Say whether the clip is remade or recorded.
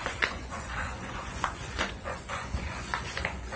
remade